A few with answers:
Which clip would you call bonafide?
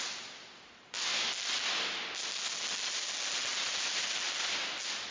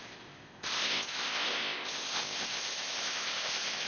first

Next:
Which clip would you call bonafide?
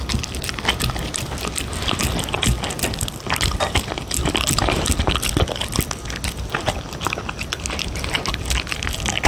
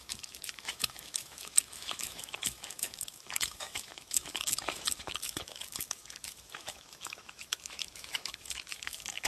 first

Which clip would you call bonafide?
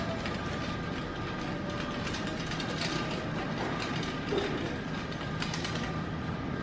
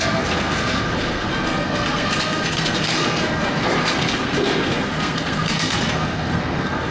first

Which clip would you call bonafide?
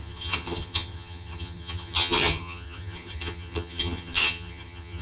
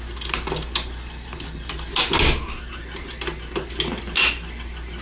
second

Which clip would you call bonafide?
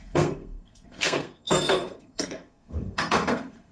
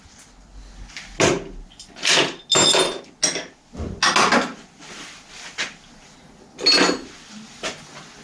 second